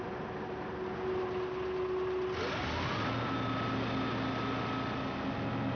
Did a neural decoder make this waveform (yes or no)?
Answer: no